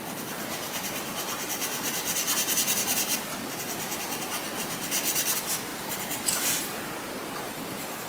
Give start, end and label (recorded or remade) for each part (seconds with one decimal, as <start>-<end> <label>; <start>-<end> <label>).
0.0-8.1 recorded